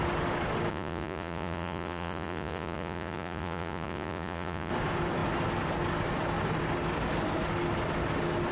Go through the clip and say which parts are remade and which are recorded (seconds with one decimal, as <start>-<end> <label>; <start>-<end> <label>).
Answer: 0.0-0.7 recorded; 0.7-4.7 remade; 4.7-8.5 recorded